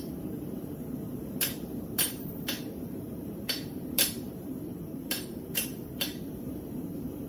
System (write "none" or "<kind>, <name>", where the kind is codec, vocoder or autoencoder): vocoder, BigVGAN v2